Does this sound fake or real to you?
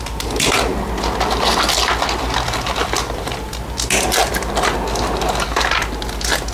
real